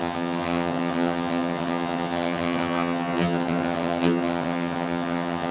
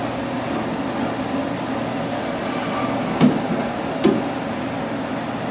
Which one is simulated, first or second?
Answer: first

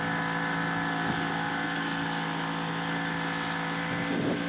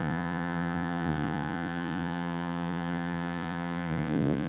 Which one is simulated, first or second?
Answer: second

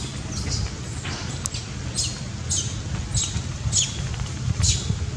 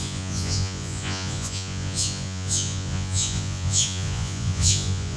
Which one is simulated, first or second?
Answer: second